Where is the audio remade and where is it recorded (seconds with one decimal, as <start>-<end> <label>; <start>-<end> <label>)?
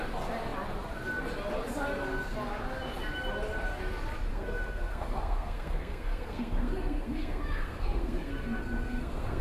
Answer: 0.0-4.3 recorded; 4.3-9.4 remade